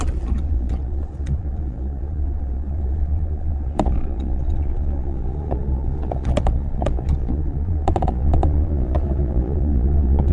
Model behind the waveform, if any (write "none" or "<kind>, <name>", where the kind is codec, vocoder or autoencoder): vocoder, Vocos